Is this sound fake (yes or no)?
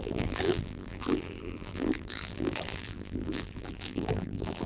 yes